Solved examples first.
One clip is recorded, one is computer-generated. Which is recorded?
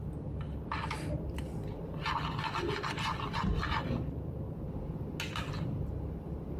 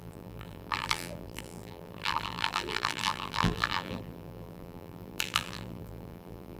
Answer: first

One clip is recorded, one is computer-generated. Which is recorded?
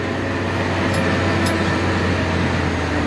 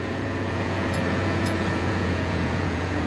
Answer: first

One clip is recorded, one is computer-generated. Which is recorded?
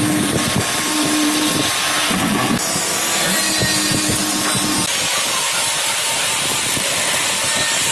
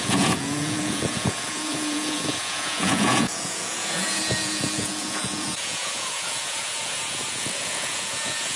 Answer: first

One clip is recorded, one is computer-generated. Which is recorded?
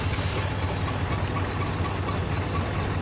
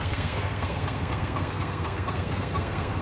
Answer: first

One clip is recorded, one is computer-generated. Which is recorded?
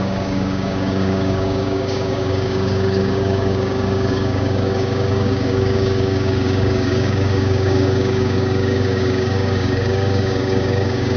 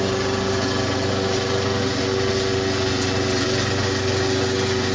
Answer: second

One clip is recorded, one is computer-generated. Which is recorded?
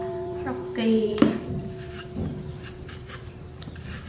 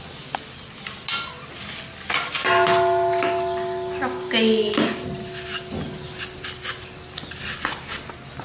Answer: second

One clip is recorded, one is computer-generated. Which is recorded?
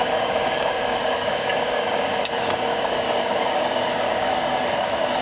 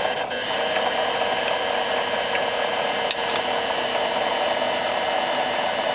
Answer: second